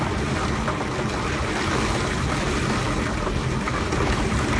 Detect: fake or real real